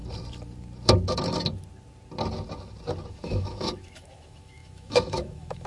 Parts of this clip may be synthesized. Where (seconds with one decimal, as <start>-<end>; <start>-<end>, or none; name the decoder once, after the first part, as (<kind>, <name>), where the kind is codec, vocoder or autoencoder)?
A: 3.1-5.7 (autoencoder, DAC-VAE)